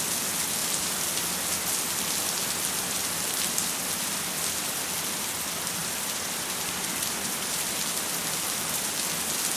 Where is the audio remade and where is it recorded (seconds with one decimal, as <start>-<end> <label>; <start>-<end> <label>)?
0.0-0.6 recorded; 0.6-1.2 remade; 1.2-5.8 recorded; 5.8-8.2 remade; 8.2-9.6 recorded